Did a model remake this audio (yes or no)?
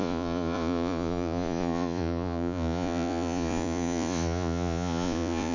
yes